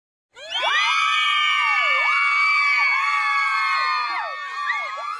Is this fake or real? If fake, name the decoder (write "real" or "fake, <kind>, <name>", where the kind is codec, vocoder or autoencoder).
real